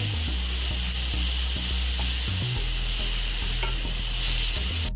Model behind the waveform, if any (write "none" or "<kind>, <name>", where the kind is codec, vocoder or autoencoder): none